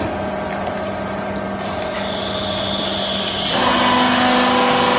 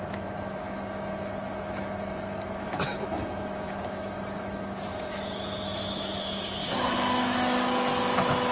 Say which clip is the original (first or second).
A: first